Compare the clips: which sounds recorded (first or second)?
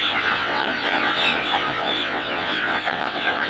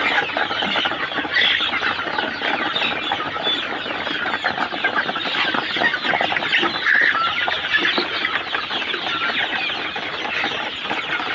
second